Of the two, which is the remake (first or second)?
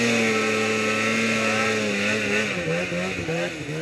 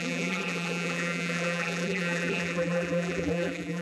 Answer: second